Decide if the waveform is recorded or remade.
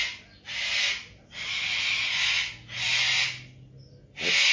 recorded